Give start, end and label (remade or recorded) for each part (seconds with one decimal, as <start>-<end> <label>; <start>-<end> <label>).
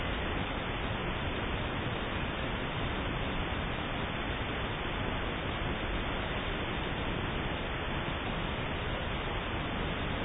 0.0-10.2 recorded